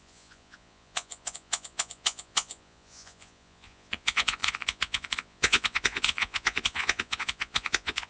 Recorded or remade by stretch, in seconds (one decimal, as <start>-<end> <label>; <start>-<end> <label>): 0.0-8.1 remade